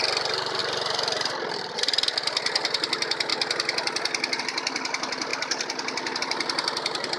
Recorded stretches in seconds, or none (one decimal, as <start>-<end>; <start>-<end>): 3.3-4.4; 5.3-6.2